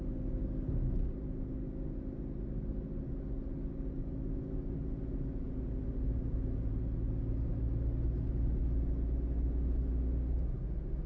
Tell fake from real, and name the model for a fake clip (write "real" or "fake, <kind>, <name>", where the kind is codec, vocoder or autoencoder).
real